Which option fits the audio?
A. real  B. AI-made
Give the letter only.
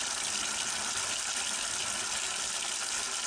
A